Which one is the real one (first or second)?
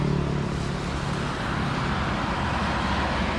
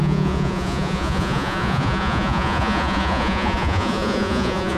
first